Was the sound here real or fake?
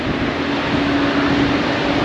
real